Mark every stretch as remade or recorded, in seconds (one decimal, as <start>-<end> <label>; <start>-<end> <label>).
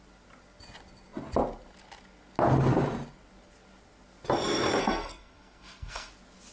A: 0.0-4.8 recorded; 4.8-6.1 remade; 6.1-6.5 recorded